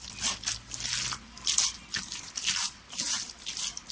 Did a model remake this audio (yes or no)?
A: no